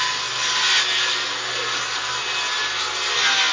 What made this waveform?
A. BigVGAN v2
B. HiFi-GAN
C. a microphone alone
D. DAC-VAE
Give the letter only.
C